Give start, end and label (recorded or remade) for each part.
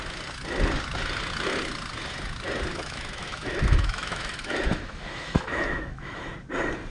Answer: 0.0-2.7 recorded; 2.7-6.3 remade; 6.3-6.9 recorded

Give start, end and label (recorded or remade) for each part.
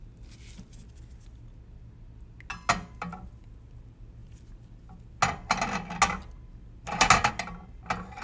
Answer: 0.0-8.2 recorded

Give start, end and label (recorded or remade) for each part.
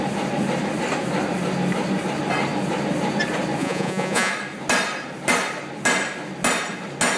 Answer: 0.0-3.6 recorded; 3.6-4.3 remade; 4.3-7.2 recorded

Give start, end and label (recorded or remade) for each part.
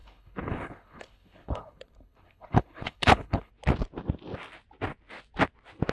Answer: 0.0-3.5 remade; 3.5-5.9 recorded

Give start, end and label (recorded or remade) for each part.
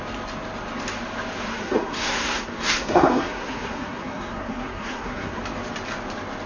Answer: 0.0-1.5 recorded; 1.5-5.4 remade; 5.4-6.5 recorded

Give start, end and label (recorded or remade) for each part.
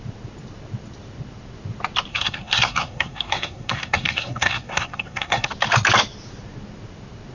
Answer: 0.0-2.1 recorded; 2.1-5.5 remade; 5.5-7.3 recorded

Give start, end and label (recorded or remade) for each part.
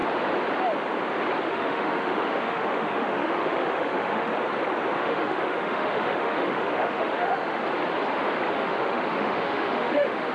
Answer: 0.0-1.5 recorded; 1.5-4.3 remade; 4.3-5.0 recorded; 5.0-7.6 remade; 7.6-8.5 recorded; 8.5-10.3 remade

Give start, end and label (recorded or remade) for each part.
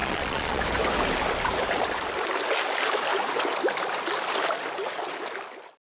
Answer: 0.0-0.6 remade; 0.6-6.0 recorded